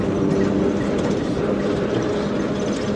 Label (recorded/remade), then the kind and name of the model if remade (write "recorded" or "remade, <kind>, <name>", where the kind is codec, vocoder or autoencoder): recorded